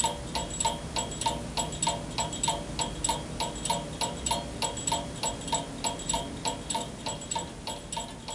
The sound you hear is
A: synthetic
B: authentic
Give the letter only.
B